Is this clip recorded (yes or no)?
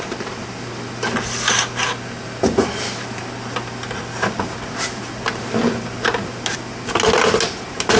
yes